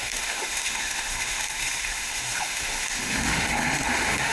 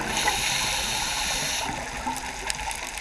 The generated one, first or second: first